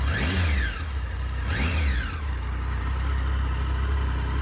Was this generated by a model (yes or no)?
no